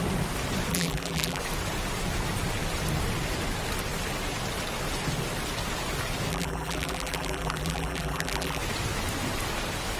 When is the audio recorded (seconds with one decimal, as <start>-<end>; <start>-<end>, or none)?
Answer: 0.0-0.7; 1.4-6.3; 8.6-10.0